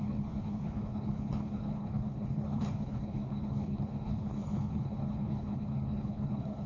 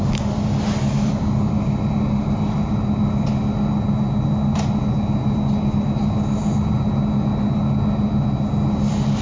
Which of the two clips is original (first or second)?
second